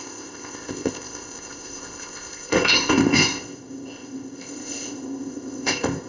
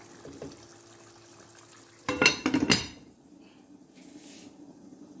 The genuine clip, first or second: second